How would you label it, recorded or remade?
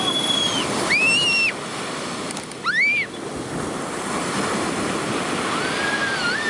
recorded